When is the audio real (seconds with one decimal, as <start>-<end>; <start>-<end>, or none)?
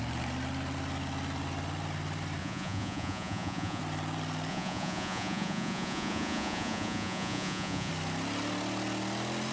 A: 0.0-2.4; 3.8-4.5; 7.9-9.5